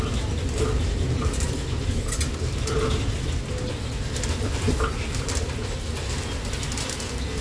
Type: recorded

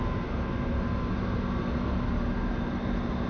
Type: recorded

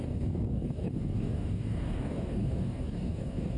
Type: remade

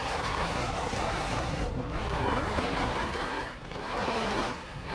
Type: remade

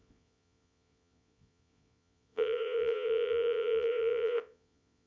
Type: remade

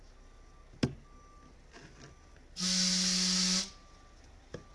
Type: recorded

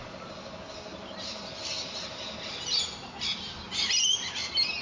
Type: recorded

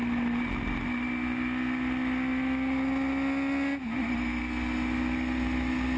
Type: recorded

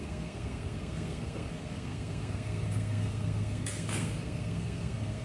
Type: remade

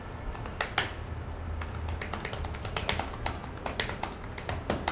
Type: recorded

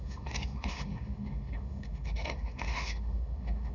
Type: remade